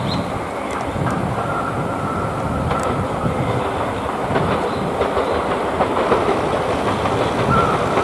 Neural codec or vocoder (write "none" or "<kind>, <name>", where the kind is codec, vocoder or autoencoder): none